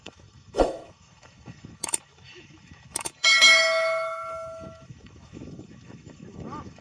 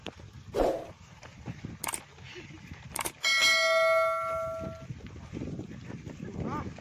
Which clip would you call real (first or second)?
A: second